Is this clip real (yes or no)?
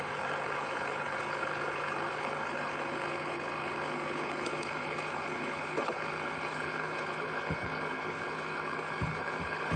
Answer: no